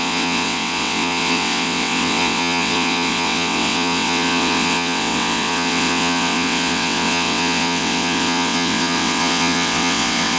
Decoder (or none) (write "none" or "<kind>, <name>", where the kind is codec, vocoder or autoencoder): vocoder, WaveNeXt